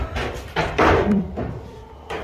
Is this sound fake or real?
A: fake